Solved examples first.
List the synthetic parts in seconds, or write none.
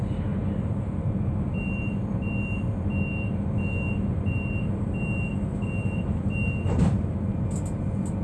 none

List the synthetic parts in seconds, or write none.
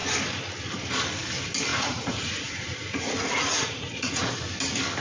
1.7-4.2 (vocoder, Vocos)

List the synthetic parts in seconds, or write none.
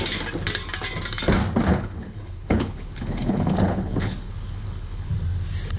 1.7-5.1 (codec, HILCodec)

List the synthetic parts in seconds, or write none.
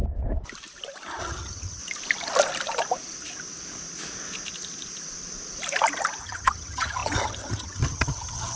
1.2-1.8 (vocoder, HiFi-GAN); 6.2-8.6